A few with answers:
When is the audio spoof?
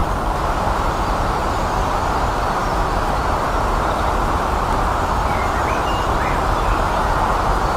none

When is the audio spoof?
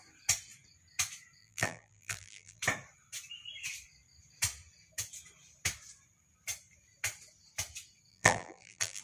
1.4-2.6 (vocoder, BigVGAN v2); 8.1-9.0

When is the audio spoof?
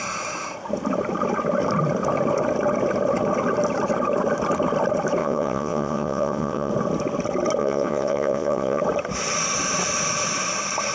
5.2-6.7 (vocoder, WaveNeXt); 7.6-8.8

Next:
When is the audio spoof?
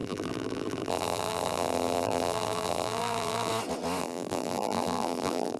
0.0-3.5 (vocoder, BigVGAN v2); 4.0-5.6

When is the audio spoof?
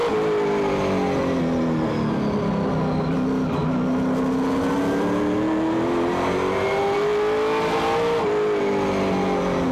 none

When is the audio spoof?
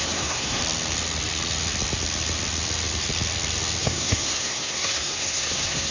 0.0-0.6 (codec, SNAC); 3.8-5.9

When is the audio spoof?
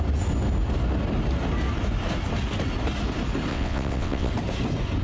3.5-4.3 (vocoder, WaveNeXt)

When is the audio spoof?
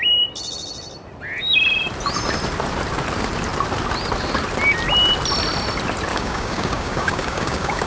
6.1-7.9 (codec, DAC)